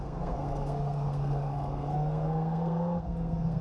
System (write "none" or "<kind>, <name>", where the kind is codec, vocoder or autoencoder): codec, SNAC